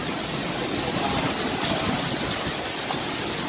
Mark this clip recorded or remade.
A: recorded